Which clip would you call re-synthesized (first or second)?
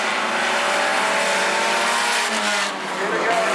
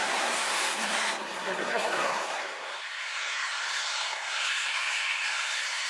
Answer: second